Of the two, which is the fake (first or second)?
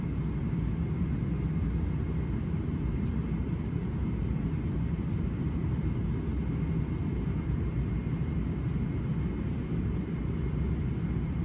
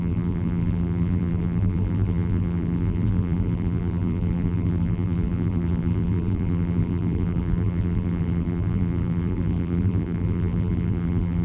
second